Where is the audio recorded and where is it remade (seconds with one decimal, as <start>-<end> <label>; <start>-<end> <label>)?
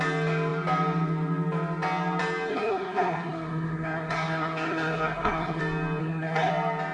0.0-2.5 recorded; 2.5-5.6 remade; 5.6-6.0 recorded; 6.0-6.5 remade; 6.5-6.9 recorded